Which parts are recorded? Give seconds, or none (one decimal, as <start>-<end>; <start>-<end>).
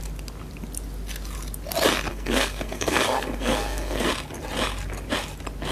0.0-2.1; 4.1-5.7